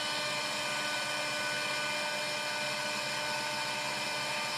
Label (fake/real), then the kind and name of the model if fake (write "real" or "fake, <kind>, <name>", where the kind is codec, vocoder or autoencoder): real